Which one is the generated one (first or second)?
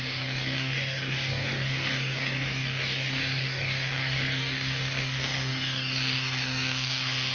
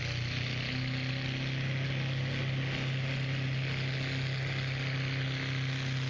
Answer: first